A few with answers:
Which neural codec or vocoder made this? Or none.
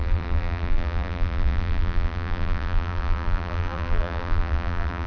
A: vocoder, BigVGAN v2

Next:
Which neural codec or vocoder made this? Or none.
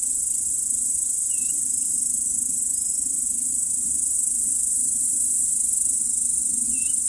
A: none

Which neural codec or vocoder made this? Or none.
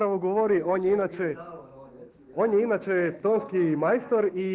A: autoencoder, DAC-VAE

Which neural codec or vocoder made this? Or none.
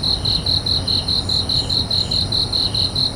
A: vocoder, BigVGAN v2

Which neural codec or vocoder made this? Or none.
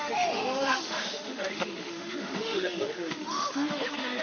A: autoencoder, DAC-VAE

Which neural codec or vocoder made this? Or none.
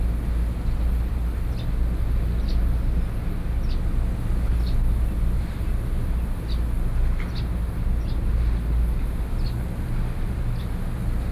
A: none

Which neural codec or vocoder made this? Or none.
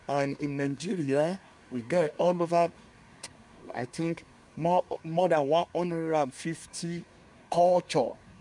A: codec, SNAC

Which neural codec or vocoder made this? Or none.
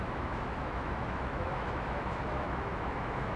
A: autoencoder, DAC-VAE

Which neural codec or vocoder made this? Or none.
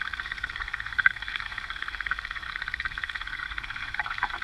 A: codec, SNAC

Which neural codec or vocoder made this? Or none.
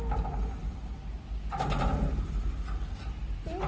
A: none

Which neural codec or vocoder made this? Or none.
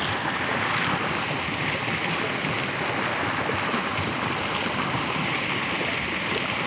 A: none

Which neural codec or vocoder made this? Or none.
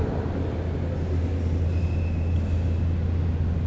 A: none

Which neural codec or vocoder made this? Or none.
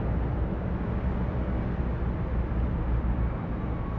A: none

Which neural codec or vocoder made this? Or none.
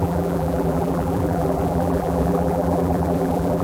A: vocoder, BigVGAN v2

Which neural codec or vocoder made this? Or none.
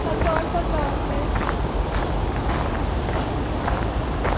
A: none